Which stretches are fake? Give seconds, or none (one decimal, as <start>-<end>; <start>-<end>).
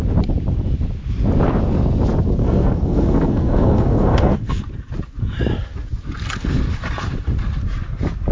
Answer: 2.4-4.6